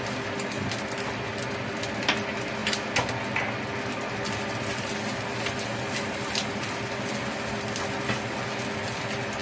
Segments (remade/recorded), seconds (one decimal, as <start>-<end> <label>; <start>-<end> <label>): 0.0-9.4 recorded